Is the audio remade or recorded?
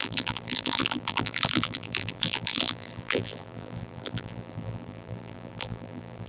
remade